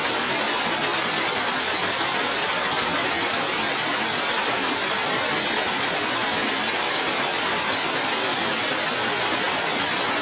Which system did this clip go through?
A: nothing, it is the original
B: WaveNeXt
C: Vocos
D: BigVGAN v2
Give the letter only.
A